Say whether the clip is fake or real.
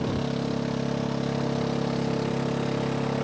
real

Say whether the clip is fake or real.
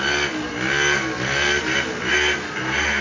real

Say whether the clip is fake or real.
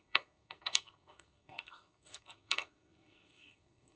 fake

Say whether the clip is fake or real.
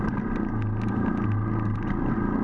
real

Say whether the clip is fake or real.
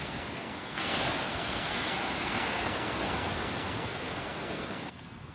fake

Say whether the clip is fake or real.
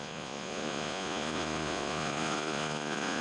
fake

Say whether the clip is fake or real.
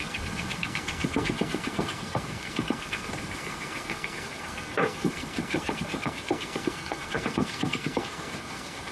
fake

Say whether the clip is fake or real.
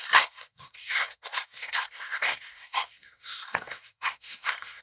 fake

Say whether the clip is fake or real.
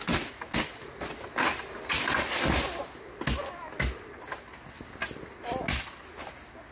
real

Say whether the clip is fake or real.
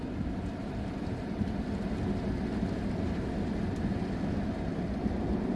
real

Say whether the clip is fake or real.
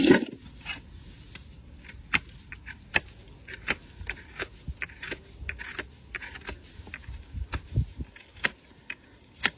real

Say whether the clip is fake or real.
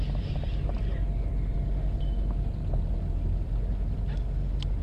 real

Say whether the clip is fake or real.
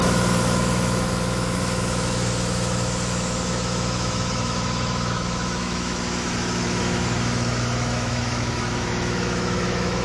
fake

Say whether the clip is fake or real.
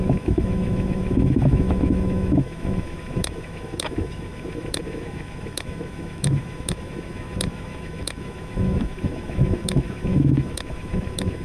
fake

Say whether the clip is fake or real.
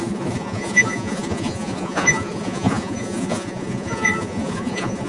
fake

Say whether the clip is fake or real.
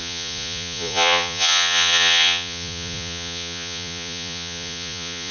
fake